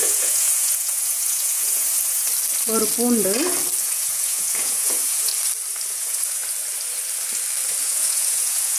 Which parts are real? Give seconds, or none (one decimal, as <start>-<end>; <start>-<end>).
2.3-3.8; 5.3-5.9; 6.4-7.8